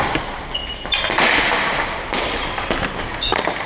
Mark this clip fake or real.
real